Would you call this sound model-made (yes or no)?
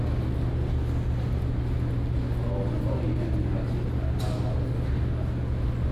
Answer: no